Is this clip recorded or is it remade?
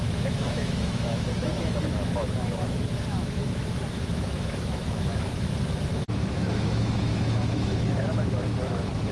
remade